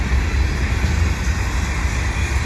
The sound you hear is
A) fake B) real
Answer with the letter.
B